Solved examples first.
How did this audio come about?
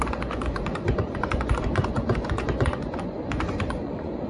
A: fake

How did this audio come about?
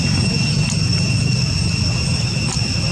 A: real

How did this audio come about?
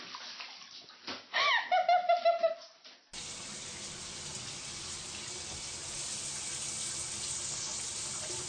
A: real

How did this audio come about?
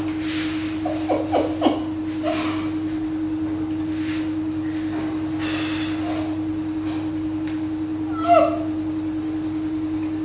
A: real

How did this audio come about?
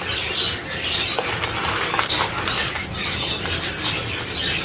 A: real